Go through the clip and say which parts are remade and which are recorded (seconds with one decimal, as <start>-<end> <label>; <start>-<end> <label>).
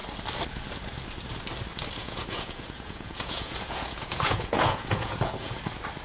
0.0-2.0 recorded; 2.0-5.6 remade; 5.6-6.0 recorded